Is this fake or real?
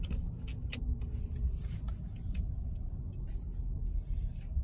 real